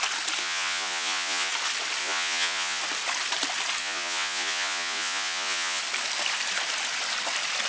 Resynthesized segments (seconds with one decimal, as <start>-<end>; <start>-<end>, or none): 0.4-1.5; 2.0-2.8; 3.8-5.8